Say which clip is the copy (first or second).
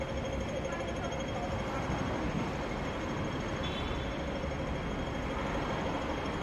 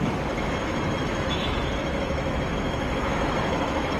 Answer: second